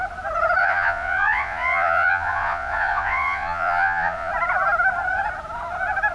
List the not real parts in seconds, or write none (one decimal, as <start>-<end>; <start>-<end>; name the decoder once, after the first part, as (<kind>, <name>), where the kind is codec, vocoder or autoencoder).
0.6-4.3 (vocoder, Vocos)